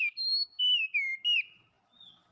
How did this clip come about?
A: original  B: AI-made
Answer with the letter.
A